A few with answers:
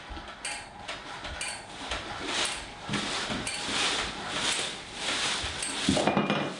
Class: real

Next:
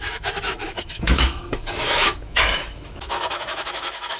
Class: fake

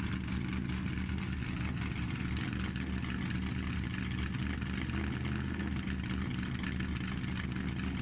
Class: real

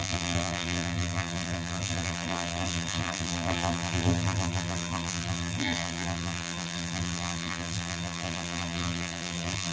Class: fake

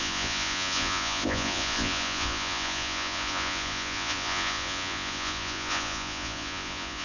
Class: fake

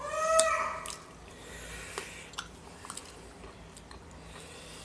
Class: real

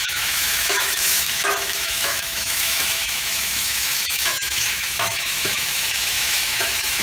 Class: fake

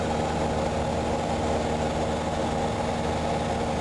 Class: real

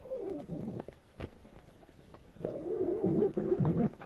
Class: fake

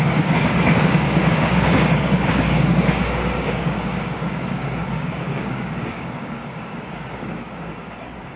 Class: fake